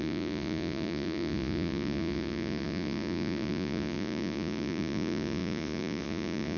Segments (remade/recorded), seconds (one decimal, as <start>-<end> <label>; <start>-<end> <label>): 0.0-6.6 remade

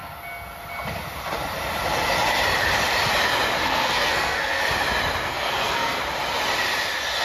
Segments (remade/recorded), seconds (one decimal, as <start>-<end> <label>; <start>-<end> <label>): 0.0-3.6 recorded; 3.6-4.6 remade; 4.6-5.3 recorded; 5.3-6.0 remade; 6.0-7.2 recorded

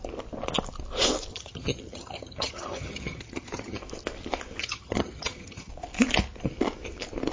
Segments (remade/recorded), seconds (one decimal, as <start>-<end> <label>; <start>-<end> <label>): 0.0-1.3 recorded; 1.3-3.8 remade; 3.8-4.6 recorded; 4.6-5.7 remade; 5.7-7.3 recorded

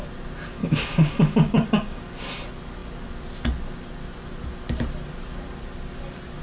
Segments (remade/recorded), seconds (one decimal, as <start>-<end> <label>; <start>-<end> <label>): 0.0-0.6 recorded; 0.6-2.0 remade; 2.0-6.4 recorded

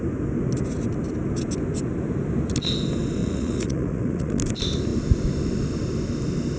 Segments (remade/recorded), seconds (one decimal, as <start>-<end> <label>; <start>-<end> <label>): 0.0-3.2 recorded; 3.2-4.4 remade; 4.4-6.6 recorded

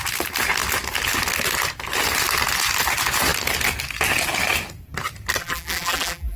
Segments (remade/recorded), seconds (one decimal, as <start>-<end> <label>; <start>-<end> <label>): 0.0-5.4 recorded; 5.4-6.4 remade

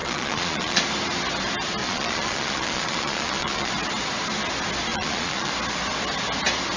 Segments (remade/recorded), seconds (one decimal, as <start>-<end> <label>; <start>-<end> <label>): 0.0-0.8 remade; 0.8-1.8 recorded; 1.8-3.7 remade; 3.7-4.9 recorded; 4.9-5.5 remade; 5.5-6.8 recorded